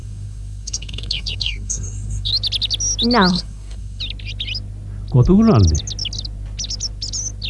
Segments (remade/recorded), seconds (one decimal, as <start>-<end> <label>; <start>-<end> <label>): 0.0-2.3 remade; 2.3-3.3 recorded; 3.3-4.0 remade; 4.0-7.5 recorded